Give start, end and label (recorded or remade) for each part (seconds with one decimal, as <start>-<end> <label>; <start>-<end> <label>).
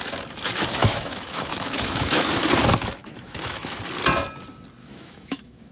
0.0-0.8 recorded; 0.8-2.4 remade; 2.4-3.0 recorded; 3.0-3.8 remade; 3.8-4.8 recorded; 4.8-5.7 remade